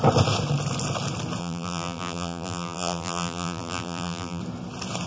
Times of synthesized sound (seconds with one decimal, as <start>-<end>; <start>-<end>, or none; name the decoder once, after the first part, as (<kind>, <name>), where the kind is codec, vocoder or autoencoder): 1.4-4.4 (vocoder, BigVGAN v2)